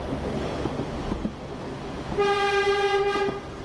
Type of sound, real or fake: real